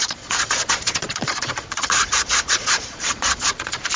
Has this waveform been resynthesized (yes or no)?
yes